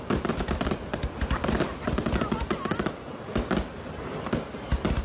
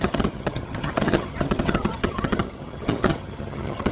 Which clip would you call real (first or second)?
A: first